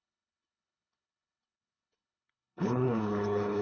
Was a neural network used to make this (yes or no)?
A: yes